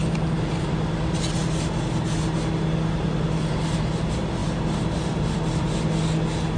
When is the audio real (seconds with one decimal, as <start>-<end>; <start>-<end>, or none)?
0.0-6.6